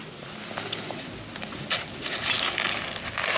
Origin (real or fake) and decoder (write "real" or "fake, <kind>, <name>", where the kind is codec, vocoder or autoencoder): real